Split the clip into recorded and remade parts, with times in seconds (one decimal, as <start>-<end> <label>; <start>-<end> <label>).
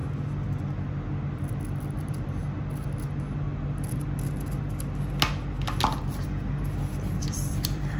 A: 0.0-2.0 recorded; 2.0-2.4 remade; 2.4-7.2 recorded; 7.2-8.0 remade